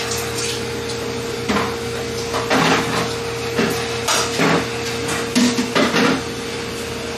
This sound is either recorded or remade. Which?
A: recorded